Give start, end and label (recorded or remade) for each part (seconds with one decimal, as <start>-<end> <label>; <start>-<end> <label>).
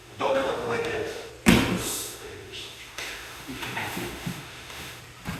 0.0-1.3 remade; 1.3-1.8 recorded; 1.8-5.0 remade; 5.0-5.4 recorded